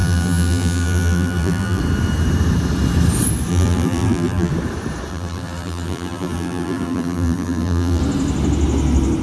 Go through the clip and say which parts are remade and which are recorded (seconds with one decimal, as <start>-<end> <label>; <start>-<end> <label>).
0.0-1.8 remade; 1.8-3.5 recorded; 3.5-4.5 remade; 4.5-5.1 recorded; 5.1-8.0 remade; 8.0-9.2 recorded